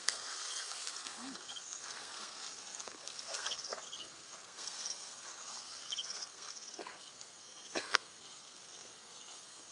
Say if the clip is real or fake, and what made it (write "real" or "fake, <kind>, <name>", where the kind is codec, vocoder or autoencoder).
fake, codec, SNAC